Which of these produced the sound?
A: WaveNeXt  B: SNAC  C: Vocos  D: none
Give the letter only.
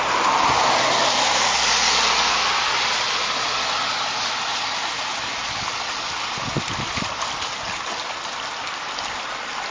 D